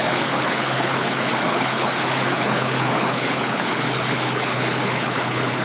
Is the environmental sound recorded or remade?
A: remade